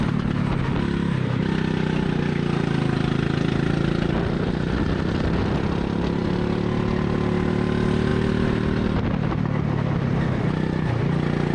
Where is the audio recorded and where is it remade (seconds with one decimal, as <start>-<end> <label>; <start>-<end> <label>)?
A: 0.0-11.5 recorded